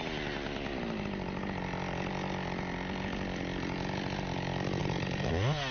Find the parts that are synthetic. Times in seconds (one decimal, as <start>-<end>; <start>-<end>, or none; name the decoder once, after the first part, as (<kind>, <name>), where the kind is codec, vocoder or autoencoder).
4.8-5.3 (vocoder, BigVGAN v2)